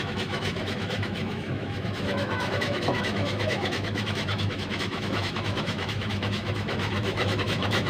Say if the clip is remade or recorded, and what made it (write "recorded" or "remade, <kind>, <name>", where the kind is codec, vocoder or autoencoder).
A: remade, autoencoder, DAC-VAE